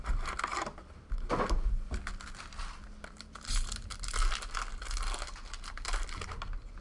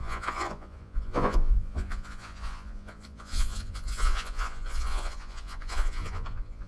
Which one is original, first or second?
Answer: first